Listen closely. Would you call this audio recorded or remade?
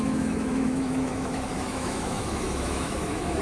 remade